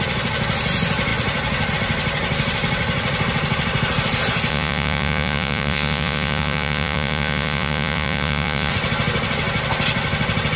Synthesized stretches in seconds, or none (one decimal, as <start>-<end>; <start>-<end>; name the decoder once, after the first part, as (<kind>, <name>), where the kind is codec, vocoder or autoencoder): 4.5-8.7 (vocoder, Vocos)